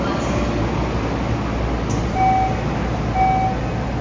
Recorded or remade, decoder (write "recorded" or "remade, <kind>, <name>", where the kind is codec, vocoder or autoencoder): recorded